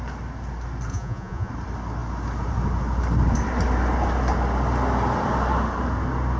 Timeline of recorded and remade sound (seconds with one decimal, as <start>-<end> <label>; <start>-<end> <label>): 0.0-0.9 recorded; 0.9-1.5 remade; 1.5-6.4 recorded